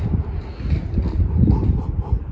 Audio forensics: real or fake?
real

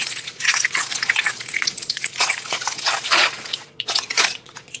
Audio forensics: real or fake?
fake